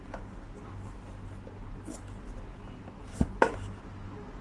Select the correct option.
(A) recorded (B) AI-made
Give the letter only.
A